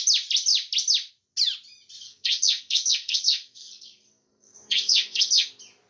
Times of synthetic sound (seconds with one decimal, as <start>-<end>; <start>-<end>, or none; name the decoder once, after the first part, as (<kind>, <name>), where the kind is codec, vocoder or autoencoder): 2.0-5.5 (codec, SNAC)